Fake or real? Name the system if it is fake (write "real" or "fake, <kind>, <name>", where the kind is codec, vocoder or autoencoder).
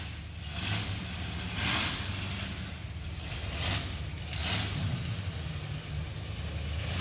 real